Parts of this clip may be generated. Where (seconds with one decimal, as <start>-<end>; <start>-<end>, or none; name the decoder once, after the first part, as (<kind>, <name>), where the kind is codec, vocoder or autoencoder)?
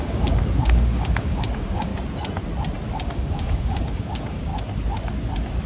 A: 0.0-1.9 (codec, DAC); 2.9-4.5